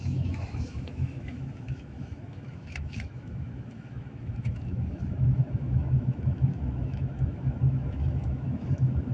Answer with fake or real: fake